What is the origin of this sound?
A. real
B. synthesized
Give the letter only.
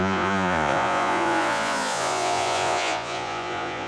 B